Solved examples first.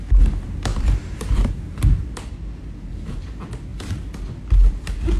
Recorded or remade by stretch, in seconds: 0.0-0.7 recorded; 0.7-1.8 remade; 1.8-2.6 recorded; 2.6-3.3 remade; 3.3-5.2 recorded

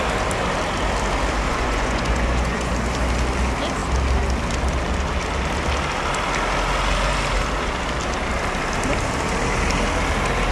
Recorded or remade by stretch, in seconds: 0.0-1.5 recorded; 1.5-2.7 remade; 2.7-10.5 recorded